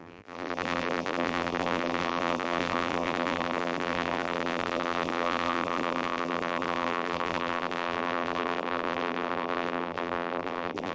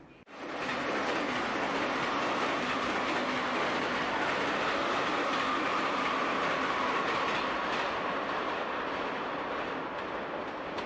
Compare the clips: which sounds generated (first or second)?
first